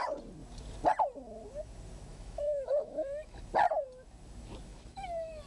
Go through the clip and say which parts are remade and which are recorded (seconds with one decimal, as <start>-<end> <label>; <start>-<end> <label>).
0.0-2.1 recorded; 2.1-3.4 remade; 3.4-4.7 recorded; 4.7-5.5 remade